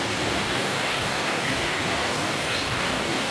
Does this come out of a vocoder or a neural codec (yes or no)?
yes